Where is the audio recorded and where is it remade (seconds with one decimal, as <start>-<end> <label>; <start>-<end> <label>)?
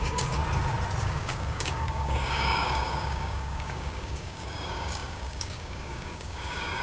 0.0-0.4 remade; 0.4-1.0 recorded; 1.0-6.8 remade